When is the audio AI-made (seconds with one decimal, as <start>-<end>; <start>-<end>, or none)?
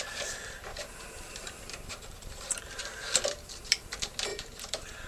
0.7-2.8; 4.3-5.1